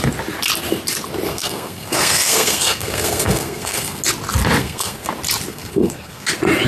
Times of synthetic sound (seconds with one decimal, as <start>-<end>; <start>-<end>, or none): 1.3-4.0; 4.6-5.1; 5.5-6.3